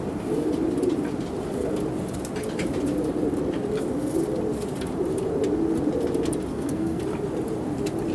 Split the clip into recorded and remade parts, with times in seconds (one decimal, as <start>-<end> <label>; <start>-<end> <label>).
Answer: 0.0-6.5 recorded; 6.5-7.0 remade; 7.0-8.1 recorded